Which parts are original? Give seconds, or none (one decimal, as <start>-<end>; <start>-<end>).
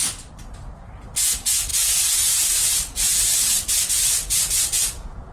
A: 0.0-1.7